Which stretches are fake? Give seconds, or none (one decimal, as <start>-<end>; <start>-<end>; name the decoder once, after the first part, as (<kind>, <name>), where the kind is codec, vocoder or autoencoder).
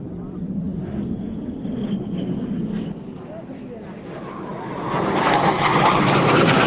none